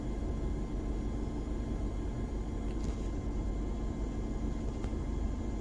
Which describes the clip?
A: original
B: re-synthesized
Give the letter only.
A